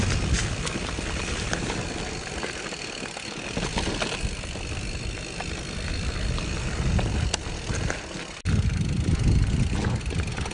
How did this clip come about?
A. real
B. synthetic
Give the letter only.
A